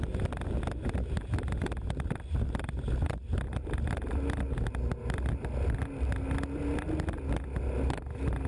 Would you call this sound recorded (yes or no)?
yes